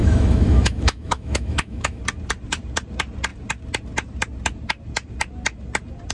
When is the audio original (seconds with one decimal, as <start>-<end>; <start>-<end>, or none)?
2.0-6.1